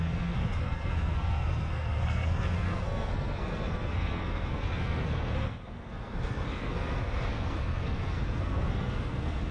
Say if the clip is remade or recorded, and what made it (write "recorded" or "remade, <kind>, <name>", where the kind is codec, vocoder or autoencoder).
remade, codec, SNAC